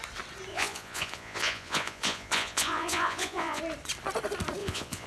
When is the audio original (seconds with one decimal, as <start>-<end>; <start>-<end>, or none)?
0.0-0.5; 3.6-4.6